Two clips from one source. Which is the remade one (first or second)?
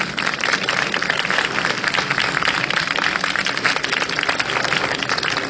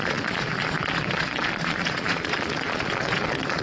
second